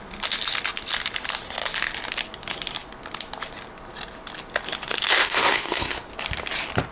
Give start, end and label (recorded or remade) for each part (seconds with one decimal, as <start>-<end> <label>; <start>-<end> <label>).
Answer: 0.0-5.2 recorded; 5.2-6.1 remade; 6.1-6.9 recorded